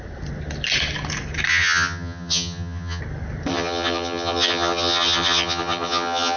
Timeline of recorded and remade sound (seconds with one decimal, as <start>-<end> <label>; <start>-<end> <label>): 0.0-1.5 recorded; 1.5-3.0 remade; 3.0-3.5 recorded; 3.5-6.4 remade